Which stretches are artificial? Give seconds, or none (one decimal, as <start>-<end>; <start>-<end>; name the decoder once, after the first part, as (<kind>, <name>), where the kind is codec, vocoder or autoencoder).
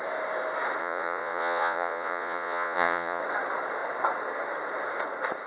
0.8-3.2 (vocoder, Vocos)